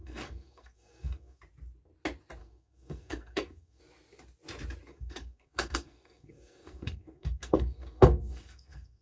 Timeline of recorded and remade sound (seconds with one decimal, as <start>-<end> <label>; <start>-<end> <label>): 0.0-1.4 remade; 1.4-2.4 recorded; 2.4-3.8 remade; 3.8-4.9 recorded; 4.9-9.0 remade

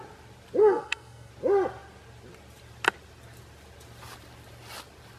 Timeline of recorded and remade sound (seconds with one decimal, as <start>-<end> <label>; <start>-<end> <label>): 0.0-0.6 recorded; 0.6-1.3 remade; 1.3-5.2 recorded

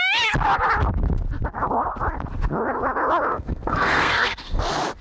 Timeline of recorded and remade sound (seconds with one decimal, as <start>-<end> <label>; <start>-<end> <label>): 0.0-3.3 recorded; 3.3-4.6 remade; 4.6-5.0 recorded

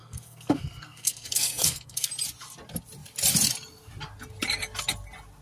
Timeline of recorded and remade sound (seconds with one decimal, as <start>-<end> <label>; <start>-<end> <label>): 0.0-2.1 remade; 2.1-5.4 recorded